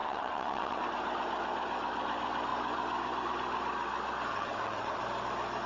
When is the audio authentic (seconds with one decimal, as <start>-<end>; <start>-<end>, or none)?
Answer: 0.8-4.3; 5.0-5.7